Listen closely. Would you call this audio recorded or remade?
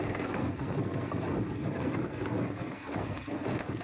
remade